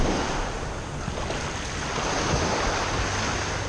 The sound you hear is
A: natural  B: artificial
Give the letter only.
A